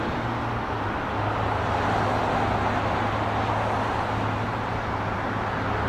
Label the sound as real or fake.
real